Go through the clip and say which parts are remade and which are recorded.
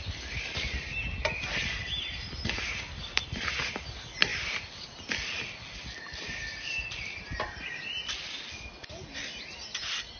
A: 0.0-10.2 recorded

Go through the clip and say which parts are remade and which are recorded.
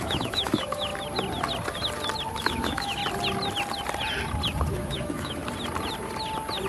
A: 0.0-0.9 remade; 0.9-2.4 recorded; 2.4-3.0 remade; 3.0-4.7 recorded; 4.7-5.4 remade; 5.4-6.7 recorded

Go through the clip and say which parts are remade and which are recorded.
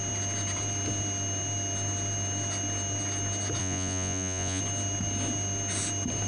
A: 0.0-3.6 recorded; 3.6-4.6 remade; 4.6-6.3 recorded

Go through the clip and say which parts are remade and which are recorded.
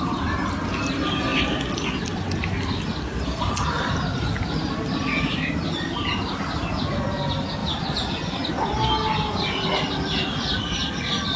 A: 0.0-11.4 recorded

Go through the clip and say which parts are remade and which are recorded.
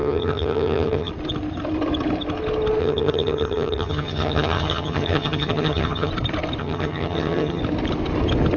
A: 0.0-1.1 remade; 1.1-2.8 recorded; 2.8-6.1 remade; 6.1-6.6 recorded; 6.6-7.6 remade; 7.6-8.6 recorded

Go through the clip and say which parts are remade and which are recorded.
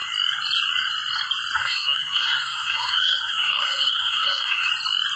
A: 0.0-1.6 recorded; 1.6-4.7 remade; 4.7-5.2 recorded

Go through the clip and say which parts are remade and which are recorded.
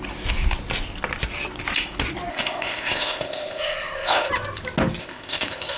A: 0.0-2.3 recorded; 2.3-4.3 remade; 4.3-5.0 recorded; 5.0-5.8 remade